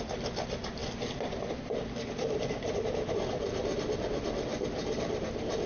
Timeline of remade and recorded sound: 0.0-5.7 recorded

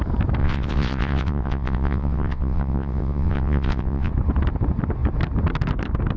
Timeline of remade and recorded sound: 0.0-0.4 recorded; 0.4-4.1 remade; 4.1-6.2 recorded

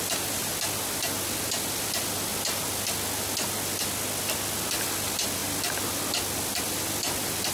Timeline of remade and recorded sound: 0.0-0.5 remade; 0.5-1.4 recorded; 1.4-2.3 remade; 2.3-4.8 recorded; 4.8-5.4 remade; 5.4-6.6 recorded; 6.6-7.5 remade

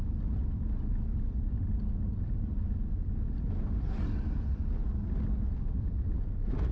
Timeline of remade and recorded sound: 0.0-0.4 recorded; 0.4-3.5 remade; 3.5-4.8 recorded; 4.8-6.1 remade; 6.1-6.7 recorded

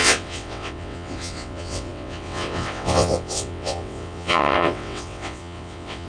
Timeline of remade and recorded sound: 0.0-6.1 remade

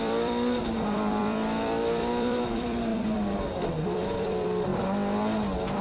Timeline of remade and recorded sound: 0.0-4.7 remade; 4.7-5.8 recorded